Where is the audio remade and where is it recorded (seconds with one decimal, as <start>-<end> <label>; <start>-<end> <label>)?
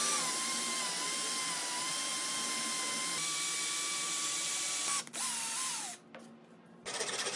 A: 0.0-2.1 recorded; 2.1-5.1 remade; 5.1-7.4 recorded